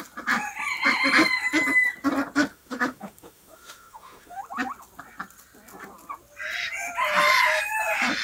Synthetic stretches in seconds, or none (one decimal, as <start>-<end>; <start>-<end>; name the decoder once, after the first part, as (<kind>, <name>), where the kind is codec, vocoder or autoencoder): 2.5-4.4 (autoencoder, DAC-VAE)